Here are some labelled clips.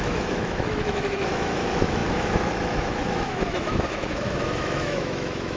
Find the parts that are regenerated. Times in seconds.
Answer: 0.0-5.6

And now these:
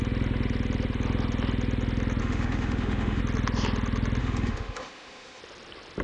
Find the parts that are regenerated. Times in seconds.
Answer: 2.2-3.2; 4.2-5.4

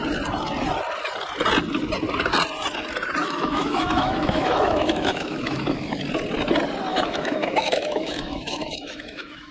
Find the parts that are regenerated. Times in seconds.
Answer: 3.2-6.0; 6.9-9.5